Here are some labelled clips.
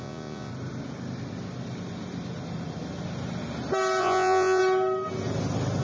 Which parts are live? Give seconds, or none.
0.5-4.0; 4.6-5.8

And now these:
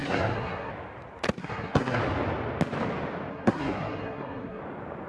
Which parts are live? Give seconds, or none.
0.7-1.4; 2.0-3.3; 4.6-5.1

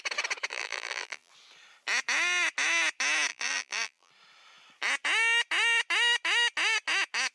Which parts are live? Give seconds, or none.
0.0-0.5; 1.3-3.3; 4.1-7.3

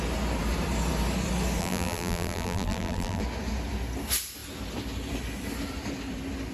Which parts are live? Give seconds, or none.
0.0-1.6; 3.2-6.5